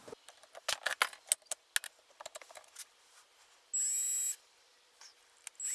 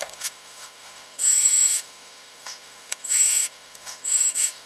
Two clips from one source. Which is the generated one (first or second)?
second